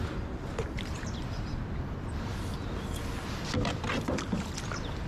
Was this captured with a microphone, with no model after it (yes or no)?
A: yes